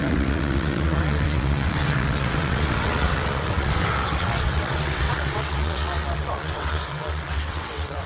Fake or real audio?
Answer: fake